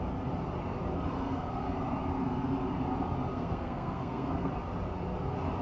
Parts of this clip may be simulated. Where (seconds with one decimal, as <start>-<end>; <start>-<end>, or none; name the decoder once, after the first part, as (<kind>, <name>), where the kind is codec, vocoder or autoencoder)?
3.3-4.5 (codec, SNAC)